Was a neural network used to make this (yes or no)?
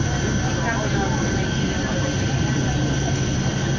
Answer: no